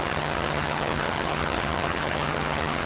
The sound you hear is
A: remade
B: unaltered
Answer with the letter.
A